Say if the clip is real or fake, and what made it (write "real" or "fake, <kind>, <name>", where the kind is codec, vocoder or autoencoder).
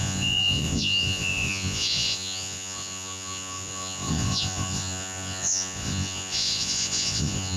fake, vocoder, Vocos